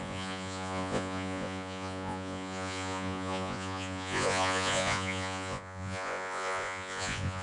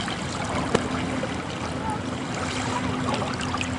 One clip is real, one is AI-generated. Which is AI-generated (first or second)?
first